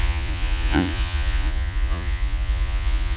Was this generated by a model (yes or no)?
yes